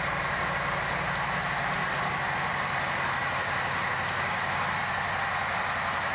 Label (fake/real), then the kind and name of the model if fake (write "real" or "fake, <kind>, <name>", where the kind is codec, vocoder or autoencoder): real